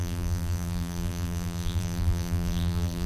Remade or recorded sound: remade